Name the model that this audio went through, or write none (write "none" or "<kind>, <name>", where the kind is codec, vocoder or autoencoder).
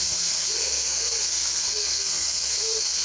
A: codec, SNAC